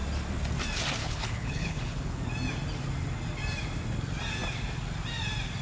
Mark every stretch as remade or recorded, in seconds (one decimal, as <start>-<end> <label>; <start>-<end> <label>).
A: 0.0-1.0 recorded; 1.0-2.2 remade; 2.2-5.6 recorded